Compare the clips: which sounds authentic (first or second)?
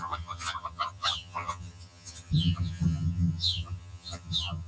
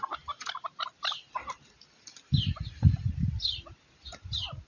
second